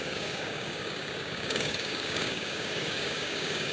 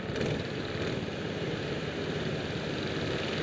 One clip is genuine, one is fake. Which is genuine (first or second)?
second